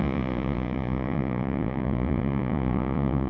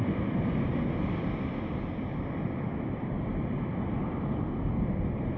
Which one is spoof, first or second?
first